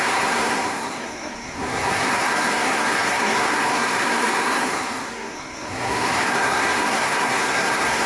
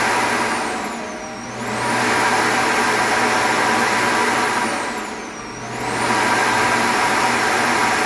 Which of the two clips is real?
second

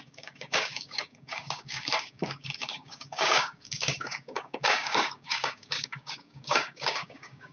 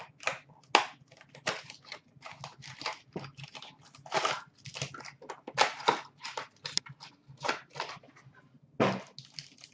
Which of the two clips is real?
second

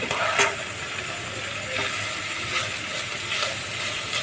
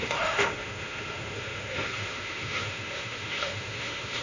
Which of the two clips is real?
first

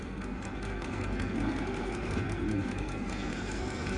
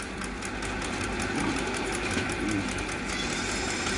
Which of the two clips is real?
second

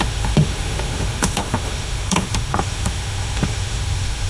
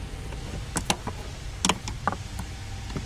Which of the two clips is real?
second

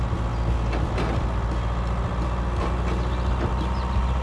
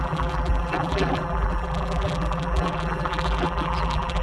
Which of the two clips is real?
first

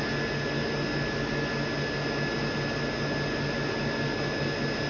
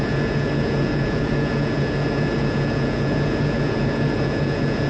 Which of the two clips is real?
first